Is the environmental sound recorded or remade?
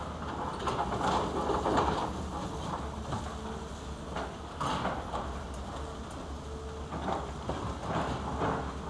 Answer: recorded